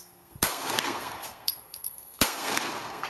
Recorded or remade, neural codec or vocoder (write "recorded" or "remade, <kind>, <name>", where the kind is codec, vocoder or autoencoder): remade, codec, SNAC